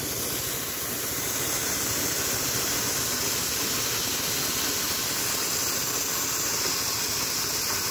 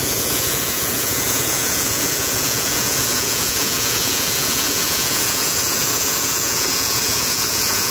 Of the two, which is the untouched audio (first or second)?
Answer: first